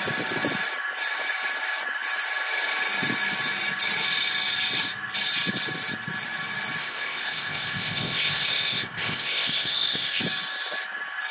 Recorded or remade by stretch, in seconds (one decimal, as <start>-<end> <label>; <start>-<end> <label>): 0.0-6.8 recorded; 6.8-10.2 remade; 10.2-11.3 recorded